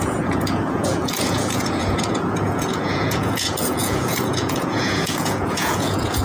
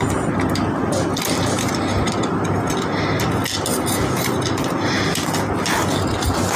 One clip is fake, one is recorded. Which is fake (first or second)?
first